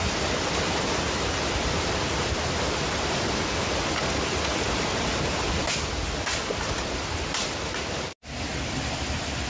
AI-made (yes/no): no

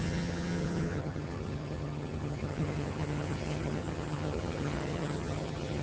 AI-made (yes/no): yes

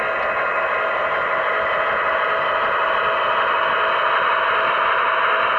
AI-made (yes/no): no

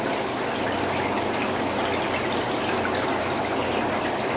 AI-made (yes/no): no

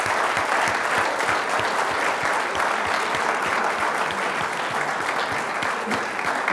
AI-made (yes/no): no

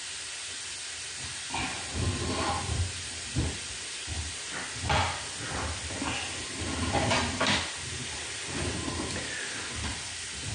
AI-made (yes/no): no